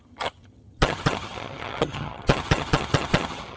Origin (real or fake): fake